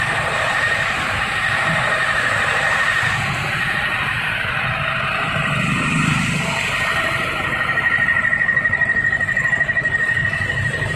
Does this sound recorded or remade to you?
remade